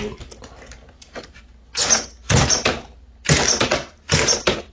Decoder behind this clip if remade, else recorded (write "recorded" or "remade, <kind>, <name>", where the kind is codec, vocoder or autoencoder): recorded